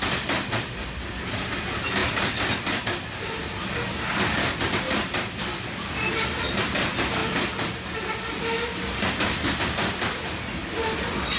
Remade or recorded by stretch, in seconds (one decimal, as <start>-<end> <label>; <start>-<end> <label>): 0.0-11.4 recorded